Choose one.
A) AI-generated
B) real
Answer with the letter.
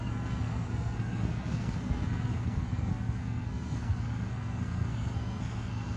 A